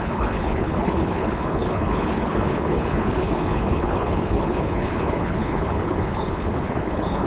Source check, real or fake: fake